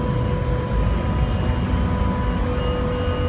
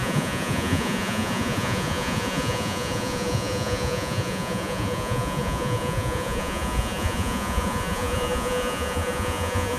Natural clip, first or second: first